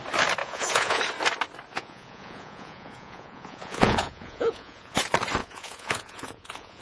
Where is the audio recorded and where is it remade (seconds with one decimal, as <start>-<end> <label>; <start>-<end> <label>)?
0.0-0.4 recorded; 0.4-1.0 remade; 1.0-1.7 recorded; 1.7-5.0 remade; 5.0-5.4 recorded; 5.4-6.8 remade